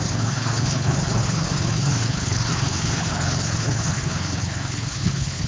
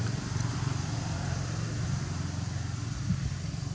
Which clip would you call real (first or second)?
second